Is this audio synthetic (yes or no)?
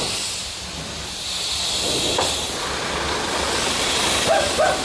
no